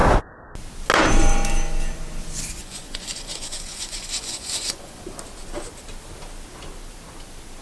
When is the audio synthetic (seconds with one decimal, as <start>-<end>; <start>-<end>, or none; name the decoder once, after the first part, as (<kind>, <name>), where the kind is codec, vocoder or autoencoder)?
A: 2.6-5.0 (vocoder, Vocos)